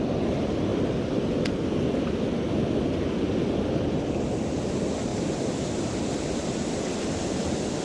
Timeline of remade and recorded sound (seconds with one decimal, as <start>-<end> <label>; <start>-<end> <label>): 0.0-7.8 recorded